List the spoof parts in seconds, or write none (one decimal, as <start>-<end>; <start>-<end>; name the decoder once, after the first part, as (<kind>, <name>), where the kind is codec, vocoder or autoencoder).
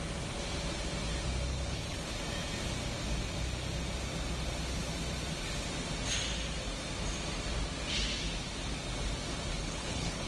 1.5-2.2 (codec, HILCodec); 9.5-10.3